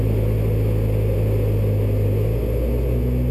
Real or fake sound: real